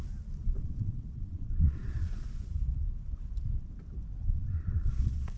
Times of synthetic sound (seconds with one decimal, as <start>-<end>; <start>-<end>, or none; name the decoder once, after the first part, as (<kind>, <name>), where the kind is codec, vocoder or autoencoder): 0.4-2.4 (vocoder, Vocos); 4.2-5.4